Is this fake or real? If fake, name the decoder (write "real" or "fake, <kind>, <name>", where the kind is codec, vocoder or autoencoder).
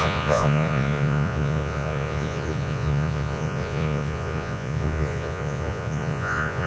fake, vocoder, Vocos